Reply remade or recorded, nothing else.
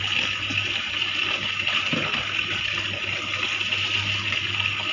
recorded